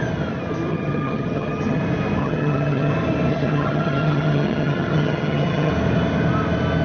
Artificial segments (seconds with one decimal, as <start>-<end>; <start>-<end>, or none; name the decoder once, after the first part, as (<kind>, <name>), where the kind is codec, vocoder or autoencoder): 0.7-1.8 (vocoder, HiFi-GAN); 2.2-2.9; 3.3-5.7

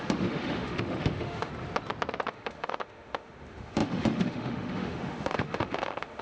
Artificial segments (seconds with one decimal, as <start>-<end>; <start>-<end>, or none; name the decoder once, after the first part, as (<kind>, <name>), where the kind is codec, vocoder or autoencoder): 0.0-1.5 (autoencoder, DAC-VAE); 2.3-6.2

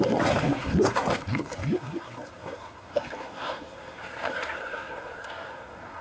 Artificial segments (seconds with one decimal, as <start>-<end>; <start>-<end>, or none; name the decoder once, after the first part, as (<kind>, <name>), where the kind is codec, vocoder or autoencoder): 0.0-6.0 (codec, SNAC)

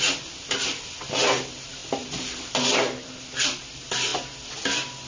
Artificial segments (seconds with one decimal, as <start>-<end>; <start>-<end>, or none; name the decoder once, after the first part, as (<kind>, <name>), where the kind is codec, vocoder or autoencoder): none

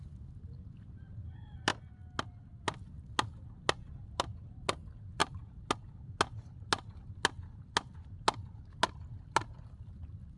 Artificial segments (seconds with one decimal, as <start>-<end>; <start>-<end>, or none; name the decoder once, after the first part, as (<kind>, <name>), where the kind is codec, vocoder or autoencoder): none

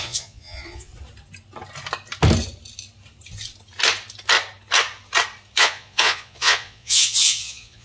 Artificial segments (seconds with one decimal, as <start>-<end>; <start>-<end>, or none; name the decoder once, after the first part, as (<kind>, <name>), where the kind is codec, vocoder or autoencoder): 0.0-0.9 (vocoder, Vocos); 5.6-7.8